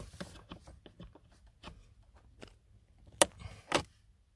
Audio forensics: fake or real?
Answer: real